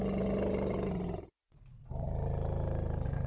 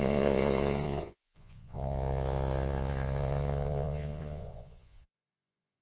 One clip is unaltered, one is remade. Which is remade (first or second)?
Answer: second